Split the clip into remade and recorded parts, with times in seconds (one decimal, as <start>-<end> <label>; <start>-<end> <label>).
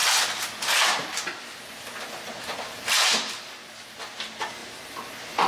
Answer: 0.0-5.5 recorded